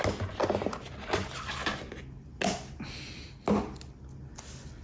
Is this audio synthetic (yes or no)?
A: no